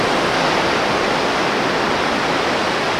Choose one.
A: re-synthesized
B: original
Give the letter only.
B